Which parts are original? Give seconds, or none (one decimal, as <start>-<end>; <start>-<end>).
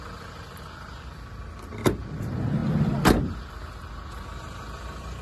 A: 0.0-5.2